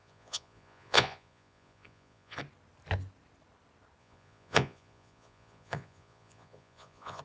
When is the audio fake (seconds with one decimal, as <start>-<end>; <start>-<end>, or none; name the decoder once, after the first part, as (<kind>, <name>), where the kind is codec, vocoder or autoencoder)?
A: 0.0-2.4 (vocoder, Vocos); 4.0-7.2